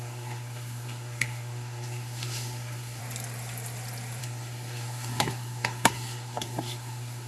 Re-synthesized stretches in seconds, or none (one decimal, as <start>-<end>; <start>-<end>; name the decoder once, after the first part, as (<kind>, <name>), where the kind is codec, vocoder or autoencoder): 0.0-3.0 (codec, SNAC); 4.2-7.3